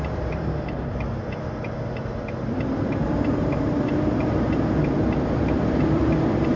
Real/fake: fake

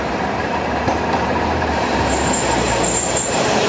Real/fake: fake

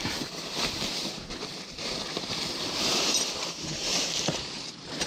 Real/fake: fake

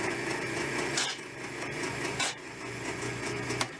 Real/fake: fake